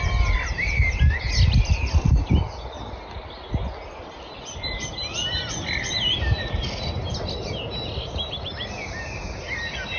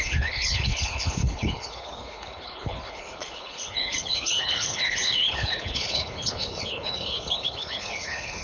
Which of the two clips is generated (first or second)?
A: second